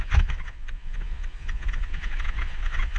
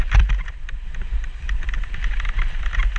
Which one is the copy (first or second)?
first